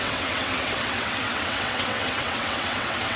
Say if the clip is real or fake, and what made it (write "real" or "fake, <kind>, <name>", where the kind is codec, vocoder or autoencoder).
fake, vocoder, WaveNeXt